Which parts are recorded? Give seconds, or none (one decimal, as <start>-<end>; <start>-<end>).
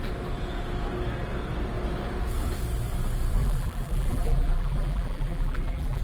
0.0-3.4